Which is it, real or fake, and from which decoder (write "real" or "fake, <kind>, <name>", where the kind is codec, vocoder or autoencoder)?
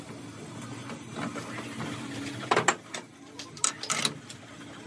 real